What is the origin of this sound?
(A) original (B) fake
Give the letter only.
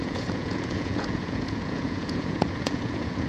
B